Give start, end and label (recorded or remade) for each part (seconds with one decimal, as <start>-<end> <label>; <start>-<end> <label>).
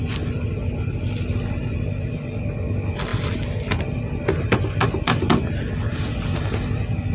0.0-7.1 recorded